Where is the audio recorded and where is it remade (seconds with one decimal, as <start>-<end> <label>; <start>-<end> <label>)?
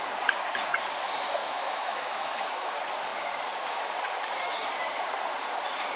0.0-1.4 recorded; 1.4-2.7 remade; 2.7-6.0 recorded